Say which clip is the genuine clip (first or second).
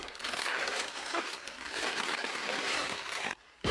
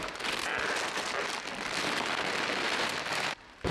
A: second